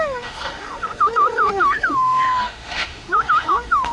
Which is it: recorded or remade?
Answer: remade